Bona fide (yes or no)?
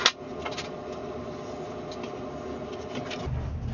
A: yes